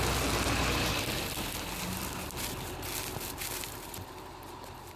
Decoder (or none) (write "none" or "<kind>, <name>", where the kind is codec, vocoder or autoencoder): none